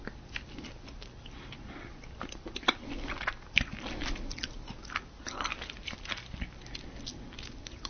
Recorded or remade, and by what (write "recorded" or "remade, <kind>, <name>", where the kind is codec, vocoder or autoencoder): recorded